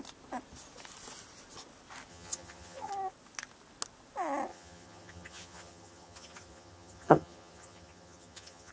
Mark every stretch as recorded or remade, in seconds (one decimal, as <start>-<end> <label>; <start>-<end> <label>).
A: 0.0-2.1 recorded; 2.1-2.9 remade; 2.9-4.5 recorded; 4.5-8.7 remade